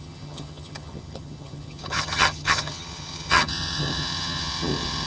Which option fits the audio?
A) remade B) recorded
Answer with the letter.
A